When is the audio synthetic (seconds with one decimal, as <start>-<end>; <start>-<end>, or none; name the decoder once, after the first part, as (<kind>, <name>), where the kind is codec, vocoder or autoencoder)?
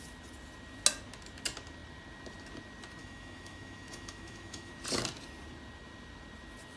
3.0-4.7 (autoencoder, DAC-VAE)